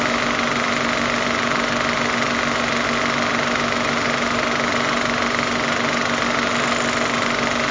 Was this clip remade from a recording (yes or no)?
no